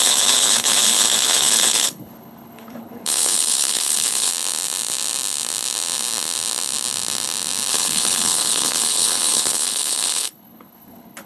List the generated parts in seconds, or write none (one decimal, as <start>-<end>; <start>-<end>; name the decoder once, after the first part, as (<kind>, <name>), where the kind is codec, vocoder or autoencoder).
0.0-4.3 (codec, HILCodec); 7.7-11.3